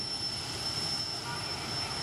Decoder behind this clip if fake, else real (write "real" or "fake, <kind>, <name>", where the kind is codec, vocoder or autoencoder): real